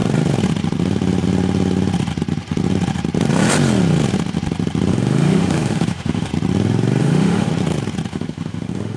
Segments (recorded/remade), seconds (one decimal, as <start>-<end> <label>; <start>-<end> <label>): 0.0-4.9 recorded; 4.9-6.3 remade; 6.3-7.0 recorded; 7.0-7.5 remade; 7.5-8.1 recorded; 8.1-9.0 remade